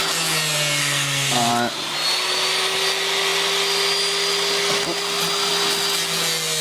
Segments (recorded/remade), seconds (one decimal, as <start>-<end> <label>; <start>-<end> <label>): 0.0-0.8 recorded; 0.8-1.5 remade; 1.5-6.6 recorded